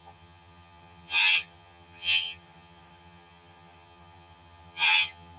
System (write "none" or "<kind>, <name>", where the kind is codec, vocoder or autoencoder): vocoder, HiFi-GAN